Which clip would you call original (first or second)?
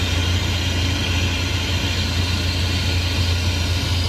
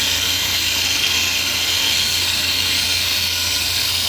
first